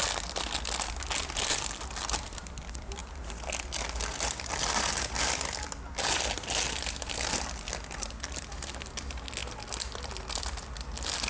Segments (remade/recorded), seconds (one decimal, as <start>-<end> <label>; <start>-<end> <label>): 0.0-11.3 recorded